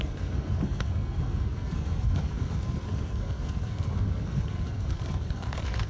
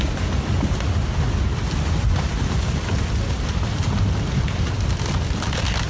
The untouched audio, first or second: second